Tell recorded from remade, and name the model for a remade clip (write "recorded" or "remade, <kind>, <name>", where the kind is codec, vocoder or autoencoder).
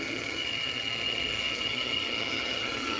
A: remade, vocoder, HiFi-GAN